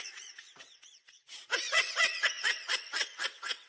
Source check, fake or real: fake